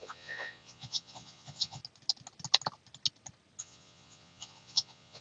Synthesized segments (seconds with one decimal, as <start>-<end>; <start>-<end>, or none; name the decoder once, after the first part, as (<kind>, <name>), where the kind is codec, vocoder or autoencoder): 0.0-1.8 (vocoder, Vocos); 3.6-5.2